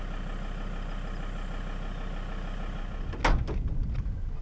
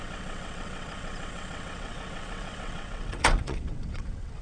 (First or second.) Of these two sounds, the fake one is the second